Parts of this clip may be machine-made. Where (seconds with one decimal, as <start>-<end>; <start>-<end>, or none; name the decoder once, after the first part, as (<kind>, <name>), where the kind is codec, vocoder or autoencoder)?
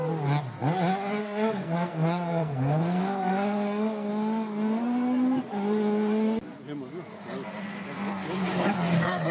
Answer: 1.2-4.1 (codec, SNAC)